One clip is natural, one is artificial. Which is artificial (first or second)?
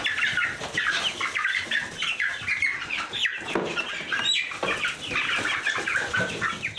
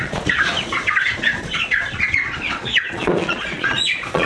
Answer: second